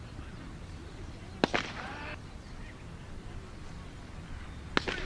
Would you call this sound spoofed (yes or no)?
no